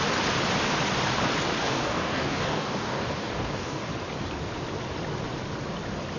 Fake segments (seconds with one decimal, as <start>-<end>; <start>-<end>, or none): 1.6-3.9